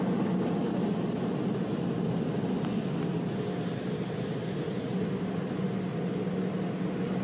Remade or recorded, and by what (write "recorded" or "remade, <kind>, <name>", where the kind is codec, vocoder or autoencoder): recorded